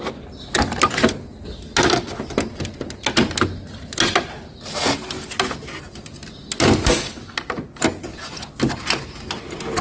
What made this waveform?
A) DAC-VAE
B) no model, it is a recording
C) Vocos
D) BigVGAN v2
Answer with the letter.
B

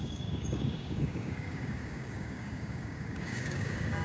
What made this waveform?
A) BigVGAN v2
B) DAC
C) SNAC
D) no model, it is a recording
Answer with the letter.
B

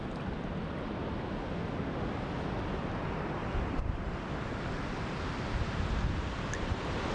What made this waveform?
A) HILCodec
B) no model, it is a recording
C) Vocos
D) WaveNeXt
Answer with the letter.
B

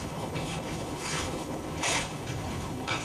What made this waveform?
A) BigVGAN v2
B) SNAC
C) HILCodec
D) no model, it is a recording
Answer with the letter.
C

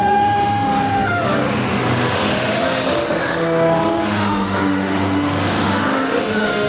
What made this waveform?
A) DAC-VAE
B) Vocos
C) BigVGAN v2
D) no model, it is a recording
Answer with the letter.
A